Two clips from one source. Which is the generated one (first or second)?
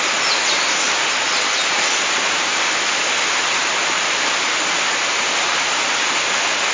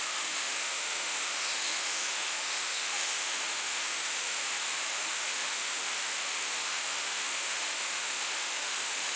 second